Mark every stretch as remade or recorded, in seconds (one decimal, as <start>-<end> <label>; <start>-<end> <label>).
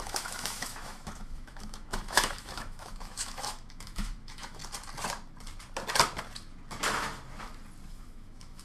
0.0-4.6 remade; 4.6-7.9 recorded; 7.9-8.6 remade